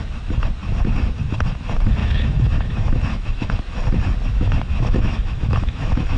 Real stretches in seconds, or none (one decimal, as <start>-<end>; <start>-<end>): 0.0-2.0; 3.5-4.3